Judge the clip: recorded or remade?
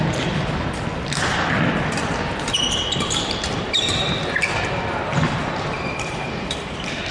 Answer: remade